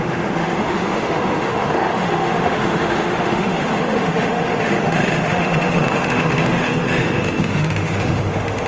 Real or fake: fake